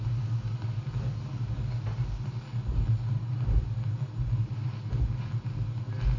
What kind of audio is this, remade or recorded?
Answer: recorded